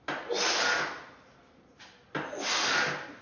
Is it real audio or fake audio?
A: real